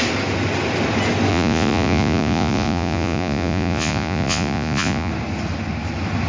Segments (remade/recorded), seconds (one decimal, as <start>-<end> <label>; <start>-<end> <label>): 0.0-1.3 recorded; 1.3-5.1 remade; 5.1-6.3 recorded